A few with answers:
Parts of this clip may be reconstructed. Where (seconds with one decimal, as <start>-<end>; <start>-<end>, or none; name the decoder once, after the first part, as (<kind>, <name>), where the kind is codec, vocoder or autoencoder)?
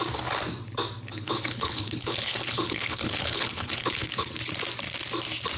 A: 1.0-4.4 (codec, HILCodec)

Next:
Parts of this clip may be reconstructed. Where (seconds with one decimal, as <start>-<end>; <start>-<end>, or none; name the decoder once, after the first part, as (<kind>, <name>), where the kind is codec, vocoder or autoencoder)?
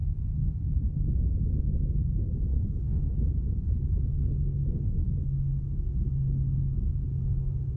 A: 2.5-4.9 (codec, HILCodec)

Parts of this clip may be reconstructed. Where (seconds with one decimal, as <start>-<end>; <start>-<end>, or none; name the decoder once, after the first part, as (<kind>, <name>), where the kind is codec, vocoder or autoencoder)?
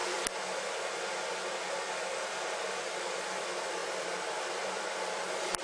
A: none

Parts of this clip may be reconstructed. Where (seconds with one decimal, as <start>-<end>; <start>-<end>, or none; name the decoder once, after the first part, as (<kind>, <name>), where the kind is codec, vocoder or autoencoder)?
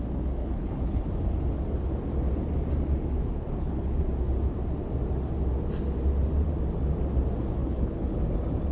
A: 0.4-1.0 (codec, HILCodec); 3.2-4.0; 7.6-8.2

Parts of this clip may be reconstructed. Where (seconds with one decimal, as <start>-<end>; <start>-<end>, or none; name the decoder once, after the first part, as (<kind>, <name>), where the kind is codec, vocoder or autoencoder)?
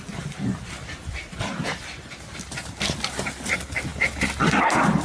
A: none